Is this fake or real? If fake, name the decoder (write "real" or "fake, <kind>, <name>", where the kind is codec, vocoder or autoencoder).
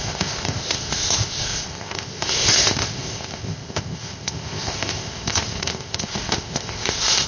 fake, codec, ZipCodec